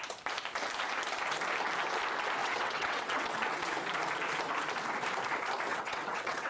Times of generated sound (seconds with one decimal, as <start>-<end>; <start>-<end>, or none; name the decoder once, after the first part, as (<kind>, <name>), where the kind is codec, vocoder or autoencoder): 2.4-3.6 (vocoder, WaveNeXt); 5.7-6.5